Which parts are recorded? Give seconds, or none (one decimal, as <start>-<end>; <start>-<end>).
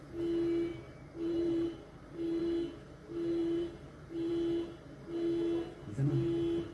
0.0-0.7; 2.4-3.4; 4.3-6.7